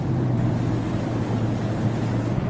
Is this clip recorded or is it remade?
recorded